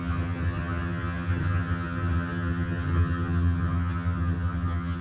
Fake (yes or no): yes